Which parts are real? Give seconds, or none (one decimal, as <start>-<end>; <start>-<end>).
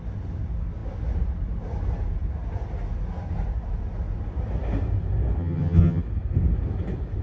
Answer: 0.0-5.4; 6.0-7.2